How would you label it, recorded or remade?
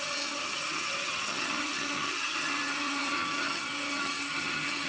remade